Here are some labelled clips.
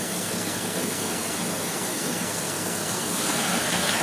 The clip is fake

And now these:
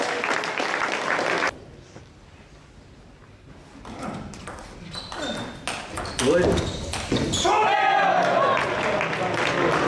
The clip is real